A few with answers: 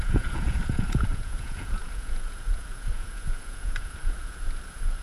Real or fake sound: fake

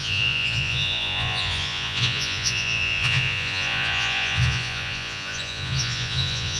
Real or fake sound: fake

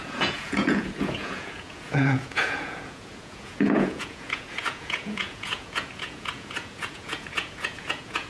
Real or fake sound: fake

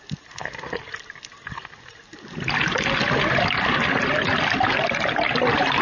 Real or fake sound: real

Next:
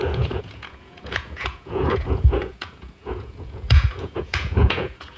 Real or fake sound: fake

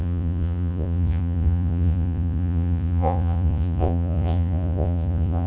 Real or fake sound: fake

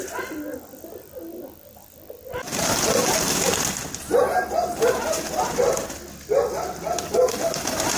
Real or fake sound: real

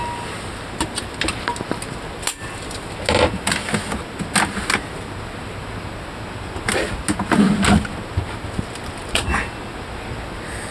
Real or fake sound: real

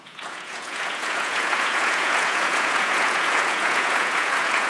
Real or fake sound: fake